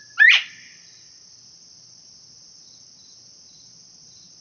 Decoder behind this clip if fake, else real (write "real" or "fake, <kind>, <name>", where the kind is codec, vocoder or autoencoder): real